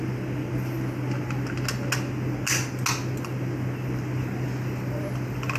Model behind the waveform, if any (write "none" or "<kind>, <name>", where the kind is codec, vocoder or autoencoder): none